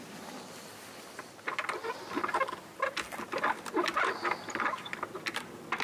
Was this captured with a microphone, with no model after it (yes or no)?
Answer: yes